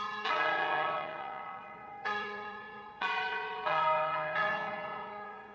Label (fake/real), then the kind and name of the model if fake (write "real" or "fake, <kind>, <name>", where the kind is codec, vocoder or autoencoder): fake, vocoder, WaveNeXt